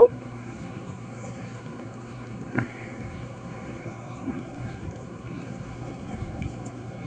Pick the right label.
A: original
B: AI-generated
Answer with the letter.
B